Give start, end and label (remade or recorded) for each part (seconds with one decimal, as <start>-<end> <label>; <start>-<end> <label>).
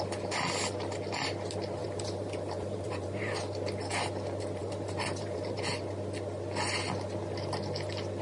0.0-1.8 recorded; 1.8-3.4 remade; 3.4-4.6 recorded; 4.6-5.6 remade; 5.6-8.2 recorded